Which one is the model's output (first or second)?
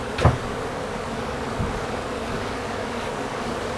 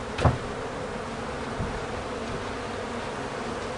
first